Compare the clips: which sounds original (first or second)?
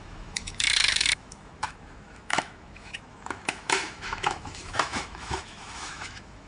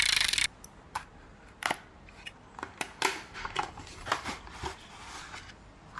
second